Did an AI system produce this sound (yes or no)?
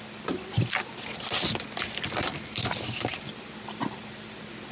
no